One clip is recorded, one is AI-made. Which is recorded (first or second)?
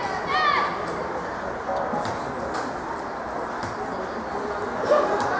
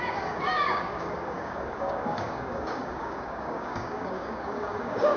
first